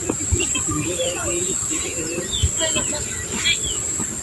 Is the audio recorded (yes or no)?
no